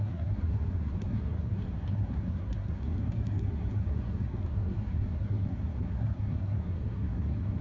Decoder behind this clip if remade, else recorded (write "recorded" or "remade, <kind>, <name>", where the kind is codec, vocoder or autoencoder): remade, codec, SNAC